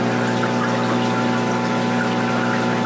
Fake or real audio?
real